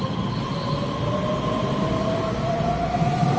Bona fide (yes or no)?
yes